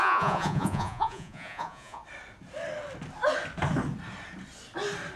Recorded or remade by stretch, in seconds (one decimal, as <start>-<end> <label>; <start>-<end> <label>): 0.0-2.0 remade; 2.0-5.2 recorded